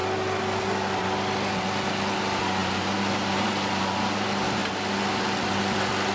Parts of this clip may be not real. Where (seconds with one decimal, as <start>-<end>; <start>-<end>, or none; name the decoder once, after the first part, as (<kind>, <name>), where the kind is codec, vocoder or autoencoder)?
none